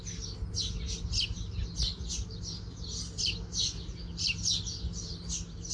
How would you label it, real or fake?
real